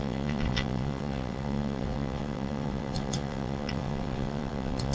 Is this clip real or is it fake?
fake